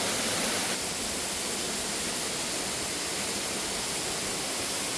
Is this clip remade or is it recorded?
recorded